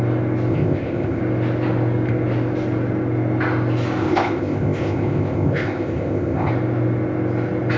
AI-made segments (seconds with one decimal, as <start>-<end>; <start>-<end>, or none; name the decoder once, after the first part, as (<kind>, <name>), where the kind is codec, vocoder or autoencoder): 0.5-1.2 (codec, ZipCodec); 4.0-6.5